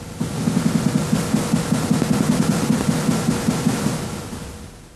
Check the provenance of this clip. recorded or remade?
recorded